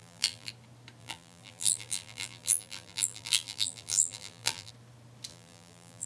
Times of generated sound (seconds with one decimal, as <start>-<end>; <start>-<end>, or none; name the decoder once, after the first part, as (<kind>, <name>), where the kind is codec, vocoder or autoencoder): 0.0-0.5 (vocoder, BigVGAN v2); 1.0-4.7; 5.3-6.1